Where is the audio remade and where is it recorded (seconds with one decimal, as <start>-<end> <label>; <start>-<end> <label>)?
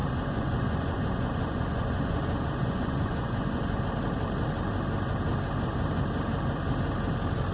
0.0-3.8 remade; 3.8-7.5 recorded